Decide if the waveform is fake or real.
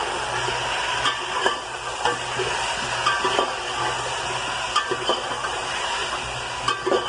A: real